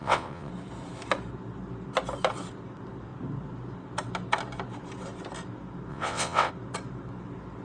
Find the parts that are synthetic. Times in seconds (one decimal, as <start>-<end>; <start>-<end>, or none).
0.0-0.5; 5.9-6.5